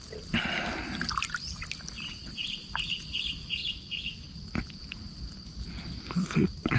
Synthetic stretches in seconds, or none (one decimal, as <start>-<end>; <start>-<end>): none